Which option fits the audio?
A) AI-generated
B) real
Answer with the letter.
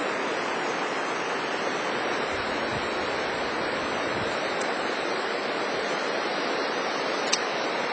B